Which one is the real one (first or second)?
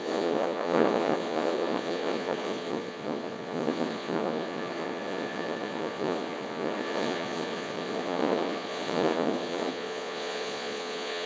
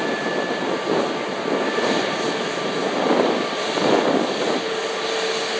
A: second